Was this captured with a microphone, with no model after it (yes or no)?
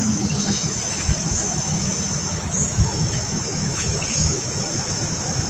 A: no